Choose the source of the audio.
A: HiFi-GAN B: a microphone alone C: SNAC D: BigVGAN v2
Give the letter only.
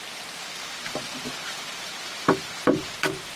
D